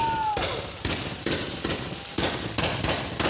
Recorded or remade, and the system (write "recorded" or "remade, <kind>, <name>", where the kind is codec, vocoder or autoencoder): recorded